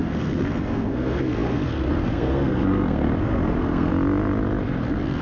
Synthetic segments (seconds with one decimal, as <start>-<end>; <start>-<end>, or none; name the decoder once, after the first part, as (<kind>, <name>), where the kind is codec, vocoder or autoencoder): 0.0-3.9 (codec, SNAC)

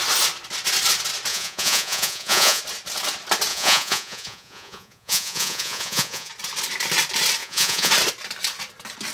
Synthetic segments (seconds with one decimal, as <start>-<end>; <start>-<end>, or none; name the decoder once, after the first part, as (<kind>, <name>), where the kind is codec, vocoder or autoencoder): 1.3-2.6 (vocoder, Vocos); 3.5-6.3; 7.4-7.9